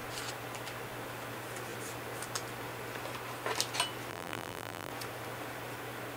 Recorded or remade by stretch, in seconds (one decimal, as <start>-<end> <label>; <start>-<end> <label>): 0.0-4.1 recorded; 4.1-4.9 remade; 4.9-6.2 recorded